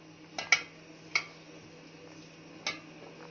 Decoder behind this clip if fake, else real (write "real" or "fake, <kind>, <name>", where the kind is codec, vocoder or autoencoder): real